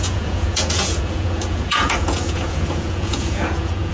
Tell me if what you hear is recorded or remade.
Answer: remade